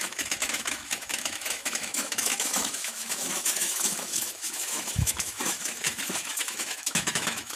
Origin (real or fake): fake